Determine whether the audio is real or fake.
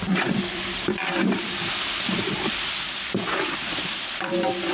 fake